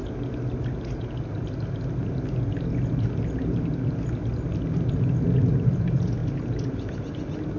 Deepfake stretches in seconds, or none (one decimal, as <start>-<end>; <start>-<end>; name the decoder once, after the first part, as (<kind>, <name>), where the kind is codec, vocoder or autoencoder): none